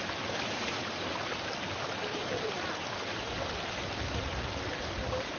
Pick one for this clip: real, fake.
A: real